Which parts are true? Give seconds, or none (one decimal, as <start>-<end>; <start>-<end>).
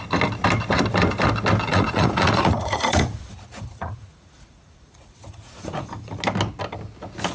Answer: 0.0-1.7; 6.1-7.3